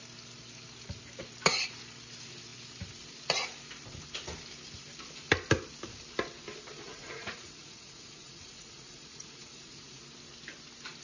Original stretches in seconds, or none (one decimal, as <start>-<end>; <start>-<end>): 0.0-6.9; 10.0-11.0